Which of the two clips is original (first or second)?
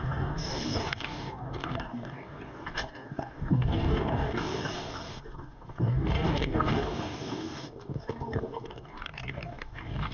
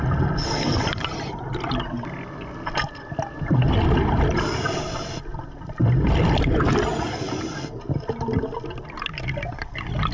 second